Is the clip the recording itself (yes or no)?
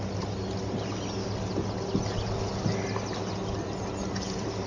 yes